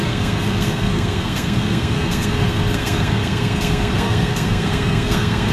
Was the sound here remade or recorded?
remade